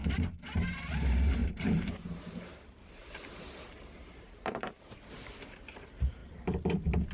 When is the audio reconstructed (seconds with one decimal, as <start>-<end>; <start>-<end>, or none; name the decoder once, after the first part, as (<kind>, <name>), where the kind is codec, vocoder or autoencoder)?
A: 0.9-7.1 (vocoder, BigVGAN v2)